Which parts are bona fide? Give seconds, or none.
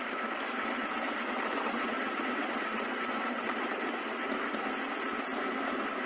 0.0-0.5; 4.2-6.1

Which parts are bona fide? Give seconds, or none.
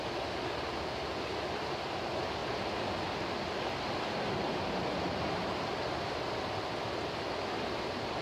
0.0-8.2